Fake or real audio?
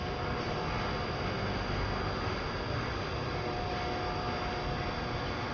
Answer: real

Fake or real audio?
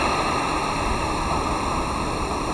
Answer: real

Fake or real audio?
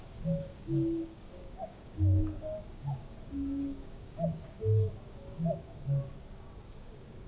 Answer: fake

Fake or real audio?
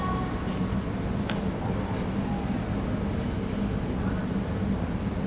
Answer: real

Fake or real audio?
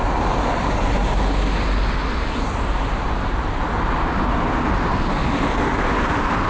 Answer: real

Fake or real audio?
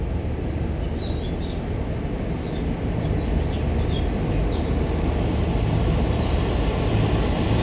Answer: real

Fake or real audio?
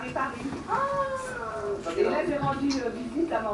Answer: real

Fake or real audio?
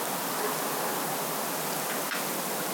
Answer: real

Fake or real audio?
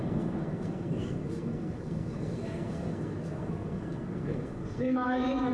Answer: fake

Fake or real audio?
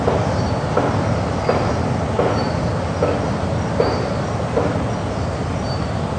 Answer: real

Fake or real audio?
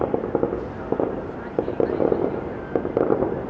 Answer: real